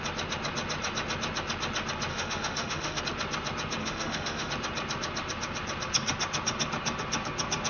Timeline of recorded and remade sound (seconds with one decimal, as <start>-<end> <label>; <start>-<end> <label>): 0.0-2.1 recorded; 2.1-3.0 remade; 3.0-3.8 recorded; 3.8-4.5 remade; 4.5-7.7 recorded